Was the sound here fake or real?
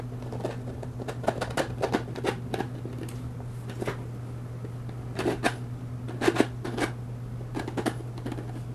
real